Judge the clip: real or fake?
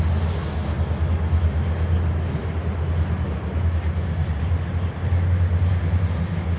real